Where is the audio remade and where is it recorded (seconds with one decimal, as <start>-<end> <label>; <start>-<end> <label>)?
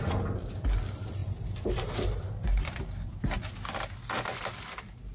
0.0-1.2 recorded; 1.2-3.3 remade; 3.3-5.1 recorded